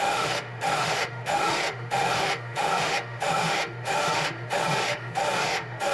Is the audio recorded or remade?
remade